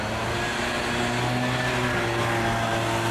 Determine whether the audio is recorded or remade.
recorded